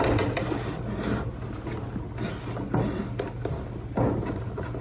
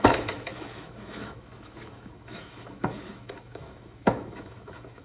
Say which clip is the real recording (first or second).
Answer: first